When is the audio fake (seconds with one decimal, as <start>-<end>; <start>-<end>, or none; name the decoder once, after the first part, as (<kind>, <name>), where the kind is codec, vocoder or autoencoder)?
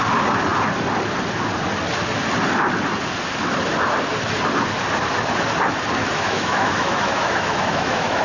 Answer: 6.0-8.2 (autoencoder, DAC-VAE)